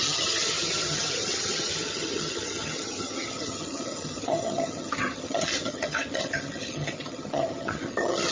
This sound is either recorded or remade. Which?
remade